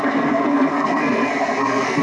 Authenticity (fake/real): fake